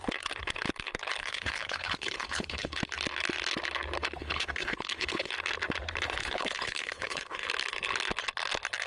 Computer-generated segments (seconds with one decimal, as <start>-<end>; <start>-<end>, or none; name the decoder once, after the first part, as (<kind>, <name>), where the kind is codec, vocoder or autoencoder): 1.2-2.8 (codec, HILCodec); 4.2-5.3; 6.2-7.5